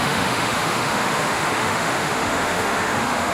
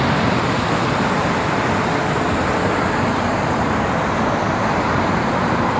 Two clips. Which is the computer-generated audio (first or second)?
first